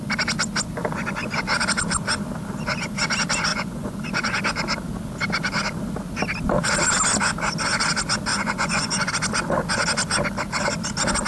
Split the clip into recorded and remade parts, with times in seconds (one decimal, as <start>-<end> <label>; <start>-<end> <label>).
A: 0.0-3.5 recorded; 3.5-4.4 remade; 4.4-8.3 recorded; 8.3-9.1 remade; 9.1-11.3 recorded